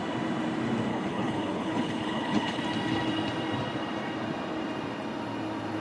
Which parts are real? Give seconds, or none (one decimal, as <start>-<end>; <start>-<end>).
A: 0.0-0.9; 2.6-5.8